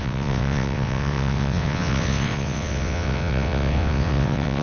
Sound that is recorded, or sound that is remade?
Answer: remade